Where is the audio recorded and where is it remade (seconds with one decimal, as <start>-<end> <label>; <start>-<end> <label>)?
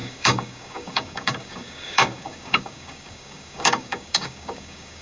0.0-5.0 remade